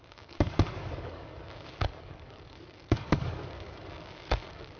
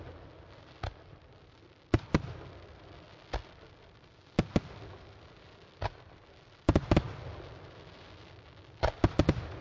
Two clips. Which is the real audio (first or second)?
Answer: second